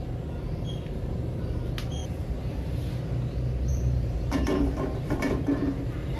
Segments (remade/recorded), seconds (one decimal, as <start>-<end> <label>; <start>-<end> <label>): 0.0-2.0 recorded; 2.0-2.9 remade; 2.9-3.7 recorded; 3.7-6.2 remade